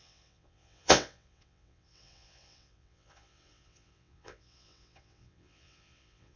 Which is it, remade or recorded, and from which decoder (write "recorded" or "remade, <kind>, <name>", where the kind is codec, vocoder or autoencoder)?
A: remade, vocoder, WaveNeXt